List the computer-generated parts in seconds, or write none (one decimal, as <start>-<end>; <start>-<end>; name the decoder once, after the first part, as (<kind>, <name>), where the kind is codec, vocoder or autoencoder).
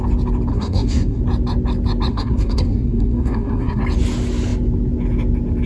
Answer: 0.5-1.2 (codec, SNAC); 2.1-3.8